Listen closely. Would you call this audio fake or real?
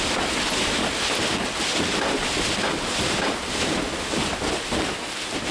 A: real